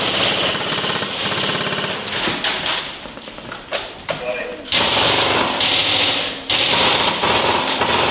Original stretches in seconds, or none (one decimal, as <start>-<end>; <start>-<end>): 0.0-8.1